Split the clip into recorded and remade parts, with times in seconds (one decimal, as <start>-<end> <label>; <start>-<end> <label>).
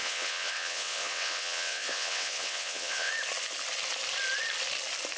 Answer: 0.0-3.1 remade; 3.1-5.2 recorded